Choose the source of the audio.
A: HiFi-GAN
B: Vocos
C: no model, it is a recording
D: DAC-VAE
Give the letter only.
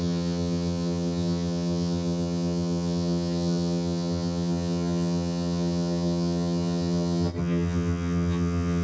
A